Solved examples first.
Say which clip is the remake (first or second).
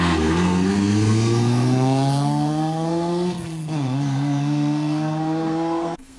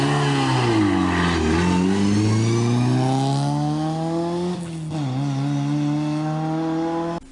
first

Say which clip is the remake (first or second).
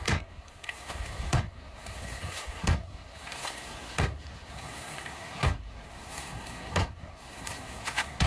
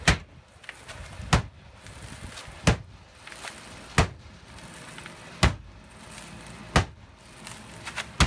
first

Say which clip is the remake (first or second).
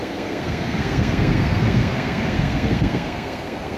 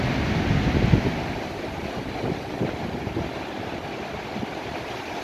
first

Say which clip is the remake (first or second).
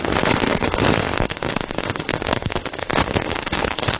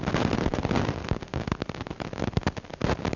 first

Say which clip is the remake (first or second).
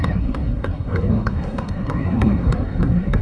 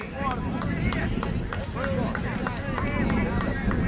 first